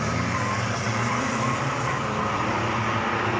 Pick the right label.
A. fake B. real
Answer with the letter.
A